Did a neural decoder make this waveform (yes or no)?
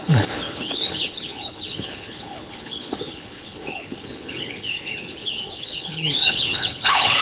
yes